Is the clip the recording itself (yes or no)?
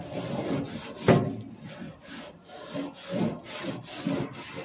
yes